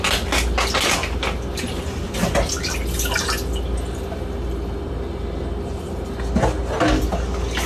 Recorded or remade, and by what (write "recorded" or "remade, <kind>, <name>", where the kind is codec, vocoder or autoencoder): recorded